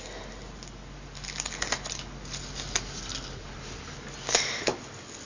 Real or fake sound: real